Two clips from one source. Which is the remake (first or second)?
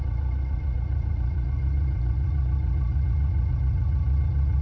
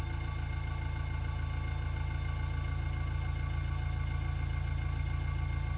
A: first